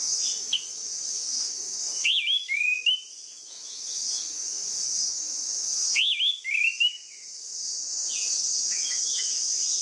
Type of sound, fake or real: fake